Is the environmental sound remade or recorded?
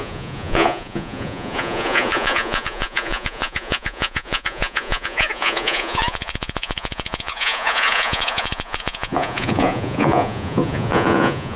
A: remade